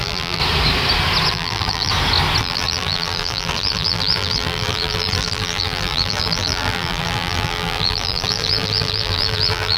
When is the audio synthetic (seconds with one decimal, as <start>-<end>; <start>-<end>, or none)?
0.0-0.4; 1.3-1.9; 2.4-9.8